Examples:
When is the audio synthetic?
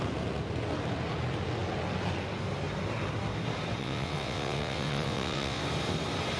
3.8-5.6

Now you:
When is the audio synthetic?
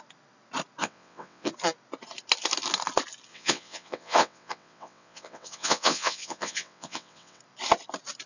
0.8-1.5; 3.3-7.4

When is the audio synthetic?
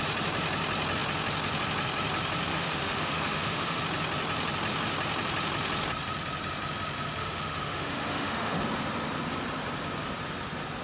2.5-3.8; 7.2-8.6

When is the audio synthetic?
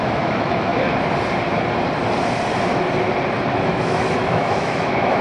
0.0-0.7; 3.5-5.2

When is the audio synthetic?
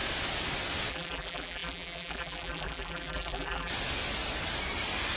0.9-3.7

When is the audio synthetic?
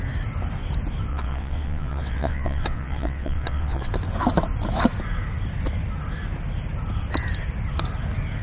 1.1-3.9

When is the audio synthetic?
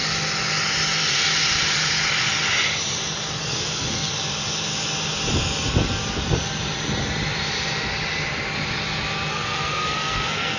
3.4-4.1; 9.3-10.6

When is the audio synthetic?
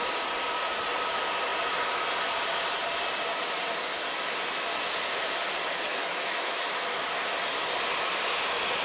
5.9-7.0